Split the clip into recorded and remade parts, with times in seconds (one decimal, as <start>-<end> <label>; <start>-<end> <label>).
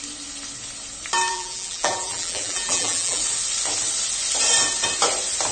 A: 0.0-1.3 recorded; 1.3-3.2 remade; 3.2-5.5 recorded